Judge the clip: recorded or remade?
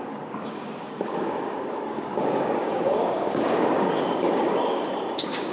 remade